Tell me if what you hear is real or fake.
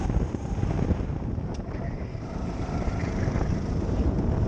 fake